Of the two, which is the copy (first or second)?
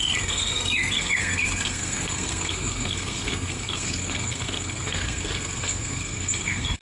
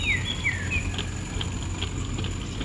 first